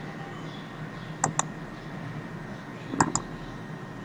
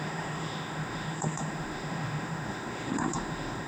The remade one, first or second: second